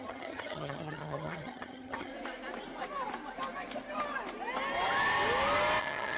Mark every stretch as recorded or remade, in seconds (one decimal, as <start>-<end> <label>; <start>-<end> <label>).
0.0-2.1 remade; 2.1-5.8 recorded; 5.8-6.2 remade